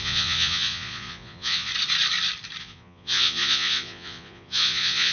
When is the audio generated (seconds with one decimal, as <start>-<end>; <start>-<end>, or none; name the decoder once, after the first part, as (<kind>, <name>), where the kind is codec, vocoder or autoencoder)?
0.0-1.7 (vocoder, Vocos); 2.6-5.1